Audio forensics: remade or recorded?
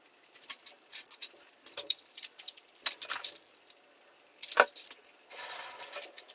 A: remade